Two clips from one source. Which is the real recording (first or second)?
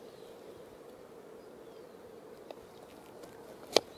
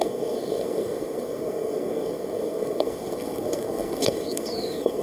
first